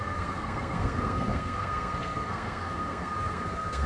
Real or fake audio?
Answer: fake